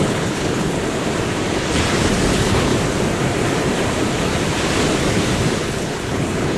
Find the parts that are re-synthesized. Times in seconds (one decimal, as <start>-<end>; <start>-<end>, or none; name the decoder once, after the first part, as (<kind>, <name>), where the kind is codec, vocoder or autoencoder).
0.0-0.8 (codec, HILCodec); 2.3-2.7; 5.6-6.6